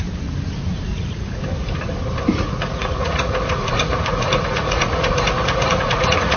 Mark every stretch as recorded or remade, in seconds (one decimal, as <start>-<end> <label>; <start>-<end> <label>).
0.0-0.9 recorded; 0.9-1.4 remade; 1.4-2.3 recorded; 2.3-6.4 remade